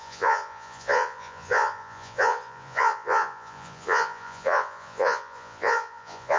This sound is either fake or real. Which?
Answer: fake